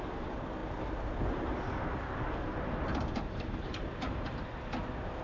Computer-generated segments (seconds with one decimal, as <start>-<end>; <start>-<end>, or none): 0.6-1.6; 3.8-4.5